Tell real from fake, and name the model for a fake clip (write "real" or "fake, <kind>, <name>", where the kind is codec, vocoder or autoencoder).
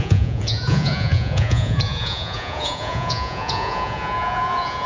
fake, vocoder, Vocos